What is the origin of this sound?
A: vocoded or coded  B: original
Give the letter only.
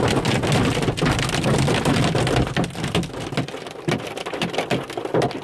B